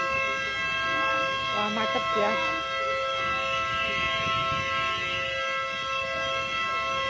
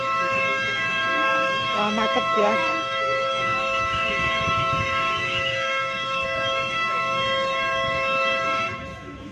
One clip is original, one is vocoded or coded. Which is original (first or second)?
first